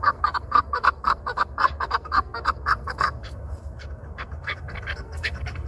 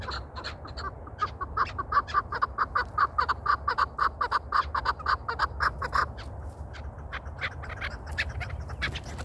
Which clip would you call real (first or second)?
second